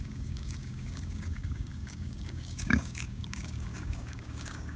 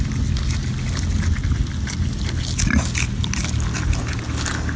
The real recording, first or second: second